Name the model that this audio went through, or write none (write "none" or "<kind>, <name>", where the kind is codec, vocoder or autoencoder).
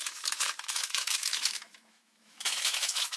autoencoder, DAC-VAE